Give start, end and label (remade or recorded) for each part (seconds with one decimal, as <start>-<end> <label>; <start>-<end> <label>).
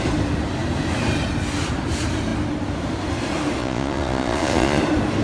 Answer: 0.0-3.6 recorded; 3.6-4.8 remade; 4.8-5.2 recorded